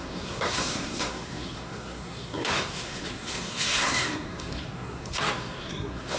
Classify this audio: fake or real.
fake